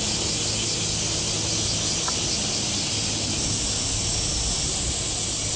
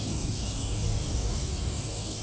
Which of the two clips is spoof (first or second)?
second